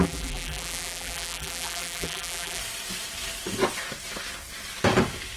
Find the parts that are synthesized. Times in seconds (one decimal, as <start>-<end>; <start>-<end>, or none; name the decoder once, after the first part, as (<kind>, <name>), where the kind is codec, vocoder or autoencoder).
0.0-2.6 (vocoder, BigVGAN v2)